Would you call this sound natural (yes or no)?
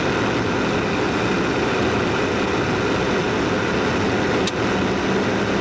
yes